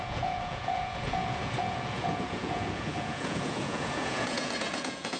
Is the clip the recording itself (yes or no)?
no